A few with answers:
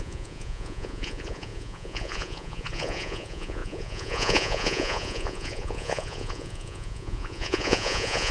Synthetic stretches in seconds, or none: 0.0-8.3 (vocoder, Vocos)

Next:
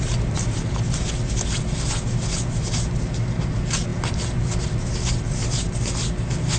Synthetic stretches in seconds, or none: none

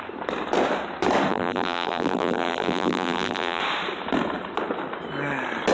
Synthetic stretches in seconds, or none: 1.3-3.6 (vocoder, BigVGAN v2)

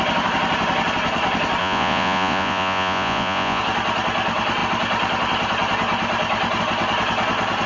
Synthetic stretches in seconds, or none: 1.6-3.6 (vocoder, Vocos)

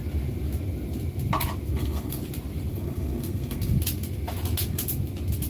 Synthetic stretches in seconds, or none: 1.7-2.2 (codec, SNAC); 2.7-3.8

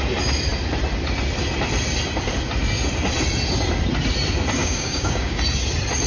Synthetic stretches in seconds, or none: 4.6-5.4 (codec, DAC)